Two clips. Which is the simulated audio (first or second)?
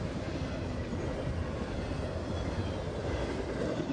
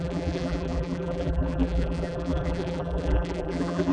second